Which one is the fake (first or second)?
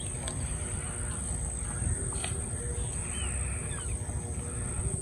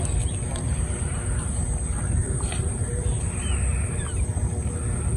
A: second